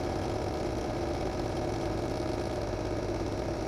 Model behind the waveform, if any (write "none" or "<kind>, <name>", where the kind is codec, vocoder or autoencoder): none